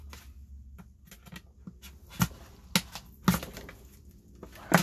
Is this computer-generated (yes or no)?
no